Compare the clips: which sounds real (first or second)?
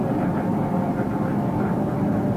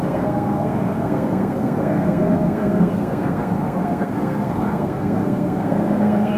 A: first